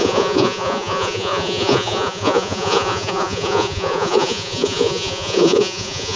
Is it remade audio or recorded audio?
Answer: remade